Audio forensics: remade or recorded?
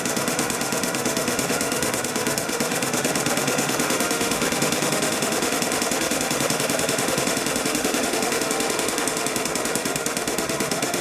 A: remade